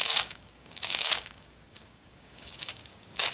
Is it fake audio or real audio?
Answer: fake